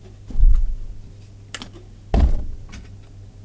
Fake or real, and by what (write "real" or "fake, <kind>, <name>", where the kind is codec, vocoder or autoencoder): real